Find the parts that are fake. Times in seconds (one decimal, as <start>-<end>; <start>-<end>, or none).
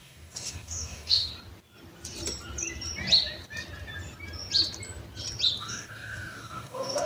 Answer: 0.0-1.3; 5.6-7.1